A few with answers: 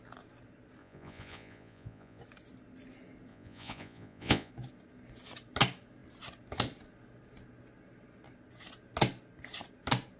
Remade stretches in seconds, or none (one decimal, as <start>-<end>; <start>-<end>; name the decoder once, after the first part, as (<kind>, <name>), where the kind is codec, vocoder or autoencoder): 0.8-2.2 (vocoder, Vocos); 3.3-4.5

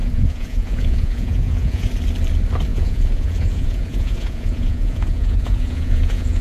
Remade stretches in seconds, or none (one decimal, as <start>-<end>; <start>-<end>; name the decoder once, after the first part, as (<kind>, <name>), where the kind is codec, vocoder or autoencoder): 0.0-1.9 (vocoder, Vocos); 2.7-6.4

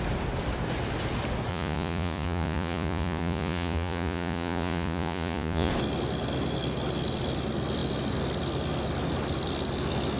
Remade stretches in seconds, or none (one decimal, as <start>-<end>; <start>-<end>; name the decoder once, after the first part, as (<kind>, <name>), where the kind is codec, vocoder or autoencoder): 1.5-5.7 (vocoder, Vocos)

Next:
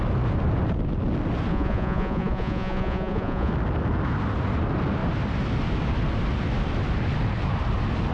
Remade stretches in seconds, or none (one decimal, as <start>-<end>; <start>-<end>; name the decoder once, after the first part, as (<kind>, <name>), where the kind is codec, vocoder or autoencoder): 1.5-3.5 (vocoder, Vocos)

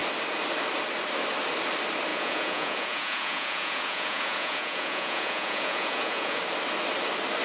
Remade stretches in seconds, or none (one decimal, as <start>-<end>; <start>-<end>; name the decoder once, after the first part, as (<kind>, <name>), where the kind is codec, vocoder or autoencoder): 2.1-6.4 (vocoder, Vocos)

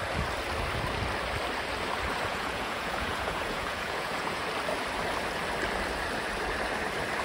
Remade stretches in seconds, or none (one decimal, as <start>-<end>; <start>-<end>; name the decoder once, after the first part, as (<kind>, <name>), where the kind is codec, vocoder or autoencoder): 2.3-4.5 (vocoder, Vocos)